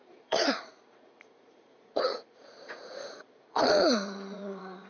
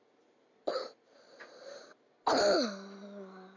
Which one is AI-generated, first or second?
first